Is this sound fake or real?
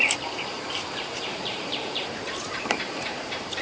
fake